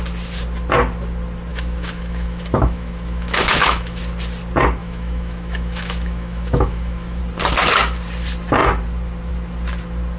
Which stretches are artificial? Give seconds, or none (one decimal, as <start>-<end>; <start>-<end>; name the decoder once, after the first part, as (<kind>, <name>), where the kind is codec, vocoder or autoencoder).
1.5-4.0 (autoencoder, DAC-VAE); 4.8-7.2